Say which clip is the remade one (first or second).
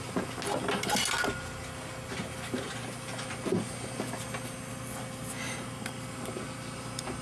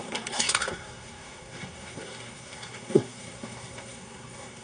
second